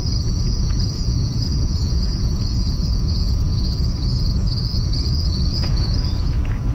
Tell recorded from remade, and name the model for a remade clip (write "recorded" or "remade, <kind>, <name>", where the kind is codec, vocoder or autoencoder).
remade, vocoder, Vocos